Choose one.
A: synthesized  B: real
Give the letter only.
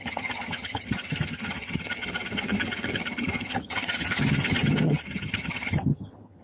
A